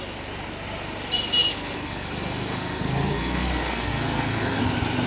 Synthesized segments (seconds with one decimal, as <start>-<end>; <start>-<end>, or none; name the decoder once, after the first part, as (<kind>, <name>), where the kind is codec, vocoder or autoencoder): 1.5-4.6 (codec, SNAC)